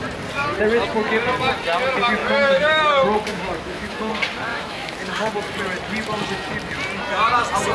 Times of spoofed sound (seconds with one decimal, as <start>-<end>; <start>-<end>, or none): 2.2-2.8; 3.3-4.1; 4.5-5.3